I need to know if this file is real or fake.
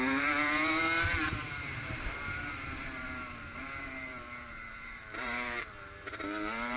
fake